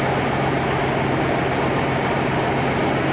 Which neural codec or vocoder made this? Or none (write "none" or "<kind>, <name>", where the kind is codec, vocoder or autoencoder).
none